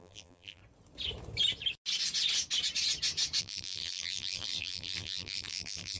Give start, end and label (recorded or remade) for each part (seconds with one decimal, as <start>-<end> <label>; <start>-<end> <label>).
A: 0.0-0.6 remade; 0.6-3.4 recorded; 3.4-6.0 remade